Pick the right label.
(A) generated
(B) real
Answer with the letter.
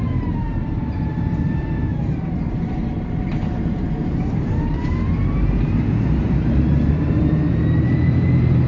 A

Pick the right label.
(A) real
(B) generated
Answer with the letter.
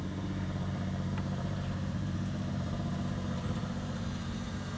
B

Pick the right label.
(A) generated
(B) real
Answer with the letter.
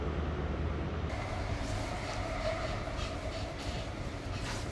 A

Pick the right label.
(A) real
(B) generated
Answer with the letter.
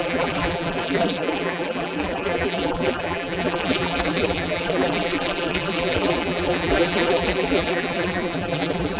B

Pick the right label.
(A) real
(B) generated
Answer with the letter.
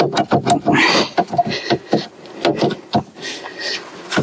A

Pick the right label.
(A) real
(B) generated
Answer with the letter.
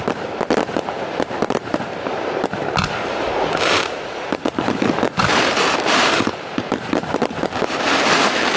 B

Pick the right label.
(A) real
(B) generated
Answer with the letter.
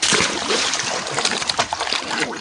B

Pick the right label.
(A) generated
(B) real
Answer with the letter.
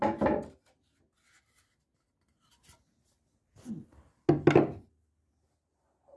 B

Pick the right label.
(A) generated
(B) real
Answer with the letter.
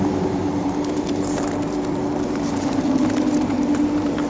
A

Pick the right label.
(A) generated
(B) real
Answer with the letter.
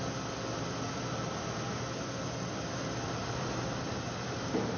A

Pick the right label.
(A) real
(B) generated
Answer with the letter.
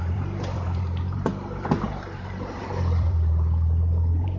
B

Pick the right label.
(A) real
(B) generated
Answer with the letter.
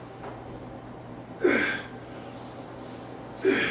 A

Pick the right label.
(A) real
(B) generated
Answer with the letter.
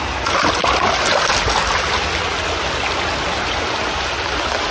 A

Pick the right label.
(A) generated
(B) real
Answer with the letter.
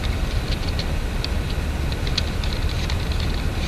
A